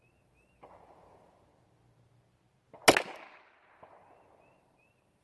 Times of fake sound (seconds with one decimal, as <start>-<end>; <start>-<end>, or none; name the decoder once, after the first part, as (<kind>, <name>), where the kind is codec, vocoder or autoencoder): 0.0-1.5 (vocoder, BigVGAN v2); 4.6-5.2